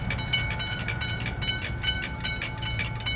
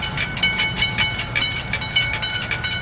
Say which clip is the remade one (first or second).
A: second